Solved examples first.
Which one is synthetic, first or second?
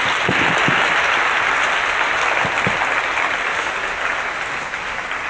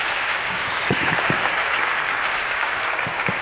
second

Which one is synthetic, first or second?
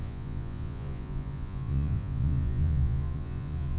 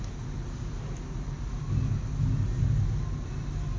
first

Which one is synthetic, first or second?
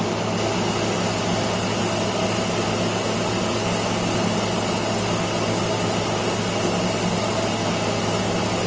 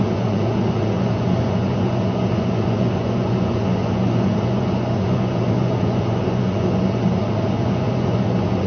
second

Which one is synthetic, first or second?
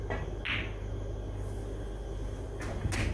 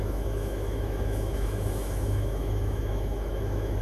second